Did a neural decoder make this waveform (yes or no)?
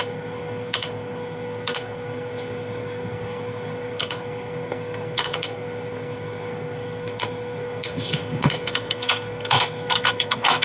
yes